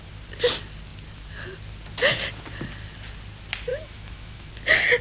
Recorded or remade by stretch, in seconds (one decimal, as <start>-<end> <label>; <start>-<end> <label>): 0.0-3.7 recorded; 3.7-4.5 remade; 4.5-5.0 recorded